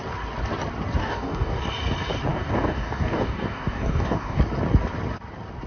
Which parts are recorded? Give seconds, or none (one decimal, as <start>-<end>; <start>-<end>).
0.0-1.0; 1.6-2.3; 4.4-5.7